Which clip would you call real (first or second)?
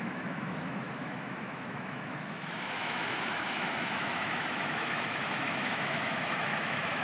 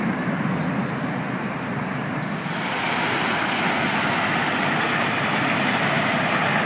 second